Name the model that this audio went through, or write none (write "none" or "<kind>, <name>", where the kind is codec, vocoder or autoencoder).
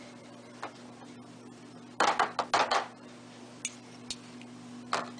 none